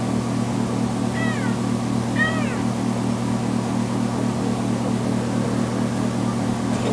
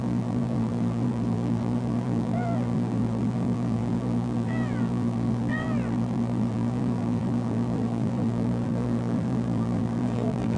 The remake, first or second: second